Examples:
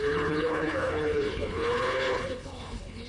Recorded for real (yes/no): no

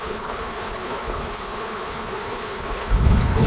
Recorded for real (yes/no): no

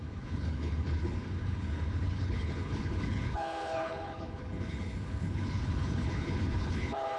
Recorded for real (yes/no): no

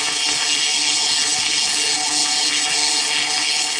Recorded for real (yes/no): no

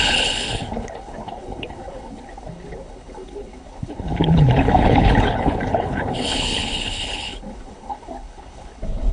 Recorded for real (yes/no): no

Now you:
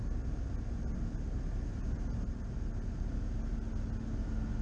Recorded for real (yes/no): yes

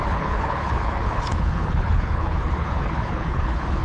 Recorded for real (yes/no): no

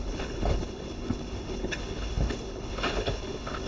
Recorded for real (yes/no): no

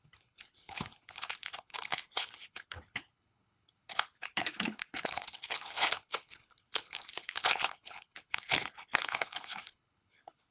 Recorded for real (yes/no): no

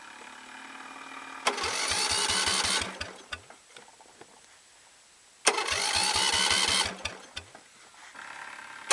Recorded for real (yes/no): yes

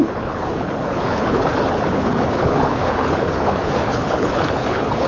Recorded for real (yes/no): no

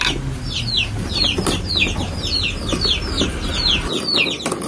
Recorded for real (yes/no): yes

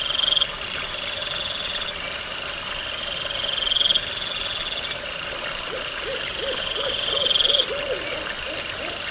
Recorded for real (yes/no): yes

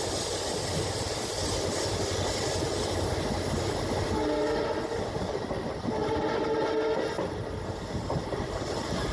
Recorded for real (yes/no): yes